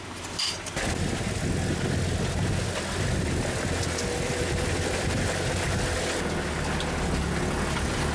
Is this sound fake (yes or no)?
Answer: no